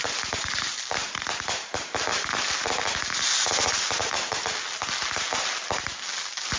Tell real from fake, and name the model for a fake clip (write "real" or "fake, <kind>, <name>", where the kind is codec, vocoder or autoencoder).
real